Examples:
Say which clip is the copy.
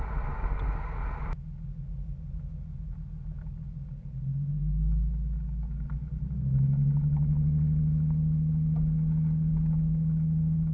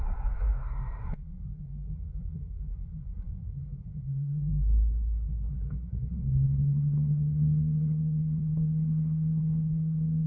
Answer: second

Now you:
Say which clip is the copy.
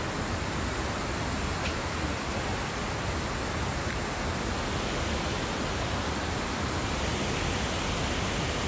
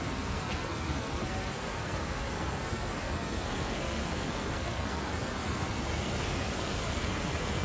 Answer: second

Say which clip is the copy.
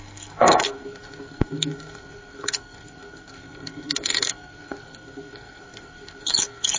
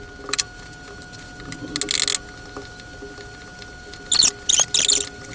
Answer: first